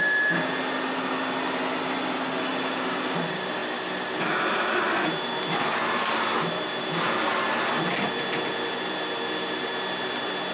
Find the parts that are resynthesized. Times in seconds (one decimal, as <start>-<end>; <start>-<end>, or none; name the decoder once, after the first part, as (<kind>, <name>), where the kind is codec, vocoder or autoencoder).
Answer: none